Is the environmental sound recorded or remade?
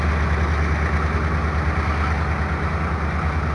recorded